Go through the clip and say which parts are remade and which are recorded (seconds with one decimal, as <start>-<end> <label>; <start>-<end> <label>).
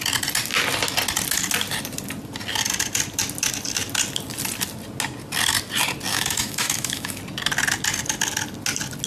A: 0.0-6.1 recorded; 6.1-7.2 remade; 7.2-9.1 recorded